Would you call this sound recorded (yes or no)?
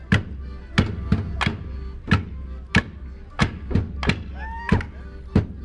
yes